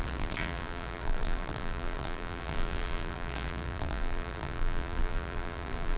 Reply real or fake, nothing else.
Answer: fake